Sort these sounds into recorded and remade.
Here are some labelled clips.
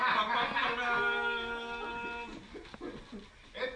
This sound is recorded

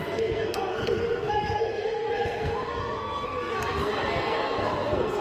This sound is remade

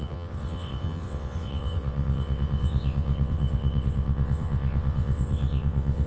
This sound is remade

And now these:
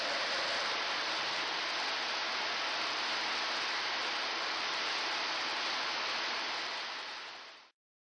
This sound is recorded